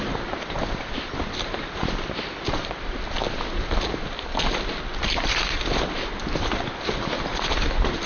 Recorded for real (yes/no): yes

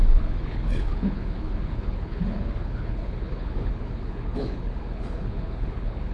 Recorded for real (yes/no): no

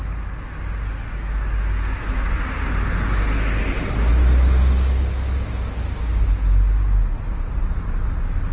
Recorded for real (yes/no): yes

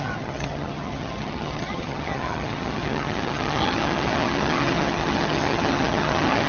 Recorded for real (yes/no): no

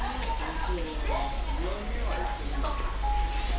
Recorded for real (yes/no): yes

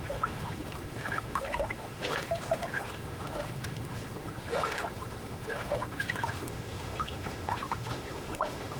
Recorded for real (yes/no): no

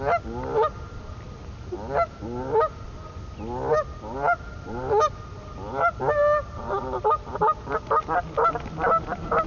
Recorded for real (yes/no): yes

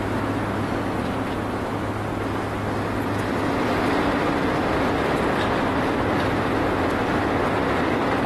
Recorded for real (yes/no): yes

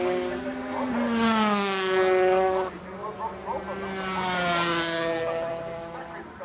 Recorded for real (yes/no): yes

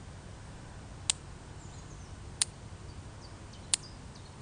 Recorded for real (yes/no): yes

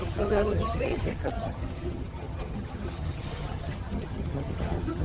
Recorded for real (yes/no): no